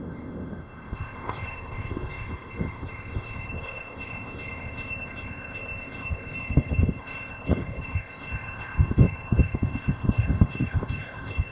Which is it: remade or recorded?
remade